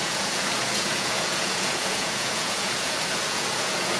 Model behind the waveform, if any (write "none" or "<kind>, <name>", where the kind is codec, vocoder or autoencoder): vocoder, Vocos